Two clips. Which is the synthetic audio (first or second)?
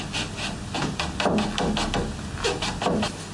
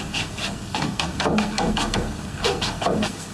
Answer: second